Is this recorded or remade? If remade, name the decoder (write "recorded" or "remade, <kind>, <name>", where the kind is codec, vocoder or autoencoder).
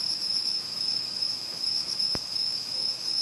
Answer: remade, autoencoder, DAC-VAE